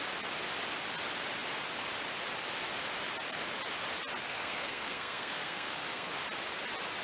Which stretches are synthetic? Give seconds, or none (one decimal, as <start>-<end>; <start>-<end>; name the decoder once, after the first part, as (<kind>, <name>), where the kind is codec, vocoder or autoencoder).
4.2-6.1 (codec, SNAC)